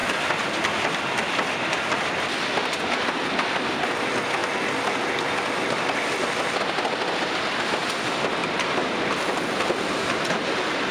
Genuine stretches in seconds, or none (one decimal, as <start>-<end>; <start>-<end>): 0.0-4.4; 6.6-8.4; 9.4-10.9

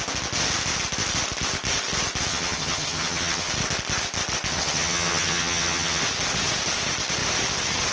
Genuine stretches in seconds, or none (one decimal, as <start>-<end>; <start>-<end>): 0.0-2.3; 3.5-4.5; 6.0-7.9